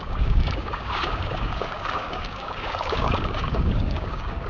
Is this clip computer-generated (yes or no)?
yes